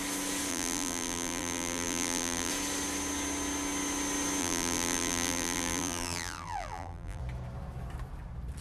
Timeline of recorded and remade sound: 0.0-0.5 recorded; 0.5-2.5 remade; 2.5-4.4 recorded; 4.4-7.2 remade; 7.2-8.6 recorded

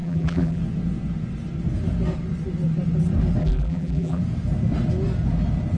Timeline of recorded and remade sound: 0.0-0.6 remade; 0.6-3.4 recorded; 3.4-4.2 remade; 4.2-5.8 recorded